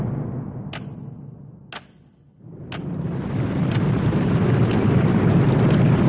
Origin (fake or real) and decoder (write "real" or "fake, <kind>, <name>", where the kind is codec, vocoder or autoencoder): real